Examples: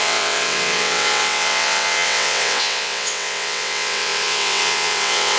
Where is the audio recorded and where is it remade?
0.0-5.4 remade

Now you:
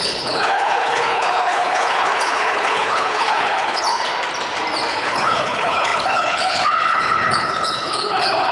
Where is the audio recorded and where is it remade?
0.0-4.1 remade; 4.1-4.9 recorded; 4.9-8.5 remade

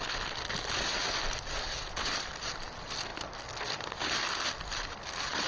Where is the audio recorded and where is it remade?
0.0-5.5 recorded

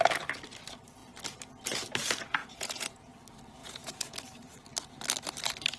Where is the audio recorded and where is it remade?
0.0-2.4 recorded; 2.4-3.0 remade; 3.0-3.6 recorded; 3.6-4.2 remade; 4.2-5.8 recorded